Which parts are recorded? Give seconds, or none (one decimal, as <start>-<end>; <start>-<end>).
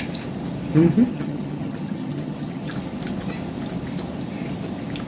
0.0-1.1; 2.7-5.1